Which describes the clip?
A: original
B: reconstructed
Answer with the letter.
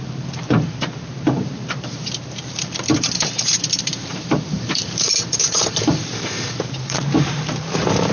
B